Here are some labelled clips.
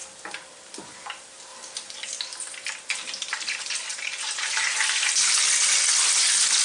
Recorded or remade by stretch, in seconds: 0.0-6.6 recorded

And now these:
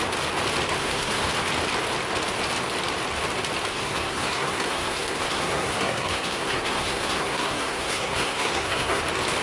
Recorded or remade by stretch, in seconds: 0.0-0.8 recorded; 0.8-1.3 remade; 1.3-3.7 recorded; 3.7-9.0 remade; 9.0-9.4 recorded

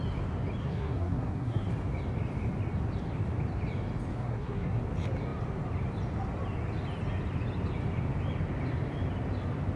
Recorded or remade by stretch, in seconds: 0.0-0.6 recorded; 0.6-1.7 remade; 1.7-4.1 recorded; 4.1-4.8 remade; 4.8-9.8 recorded

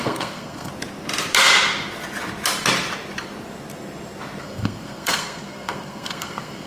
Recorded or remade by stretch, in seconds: 0.0-0.7 remade; 0.7-4.4 recorded; 4.4-6.7 remade